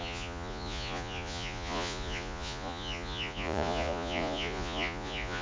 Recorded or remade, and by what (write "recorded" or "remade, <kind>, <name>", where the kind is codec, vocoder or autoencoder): remade, vocoder, Vocos